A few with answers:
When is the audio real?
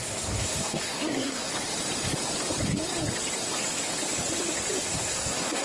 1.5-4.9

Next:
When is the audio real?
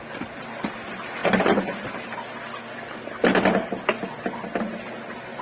0.0-5.4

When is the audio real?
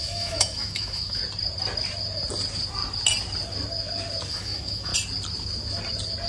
1.2-4.3; 4.9-6.3